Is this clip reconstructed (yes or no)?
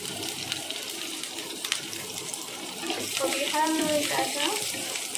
yes